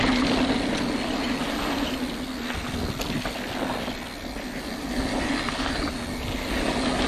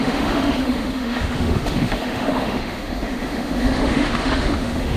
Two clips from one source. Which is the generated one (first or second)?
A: second